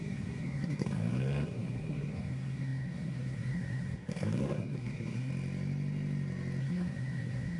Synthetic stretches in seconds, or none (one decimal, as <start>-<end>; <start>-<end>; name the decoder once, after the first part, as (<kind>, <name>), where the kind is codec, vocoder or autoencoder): 0.0-5.3 (codec, SNAC); 6.6-7.6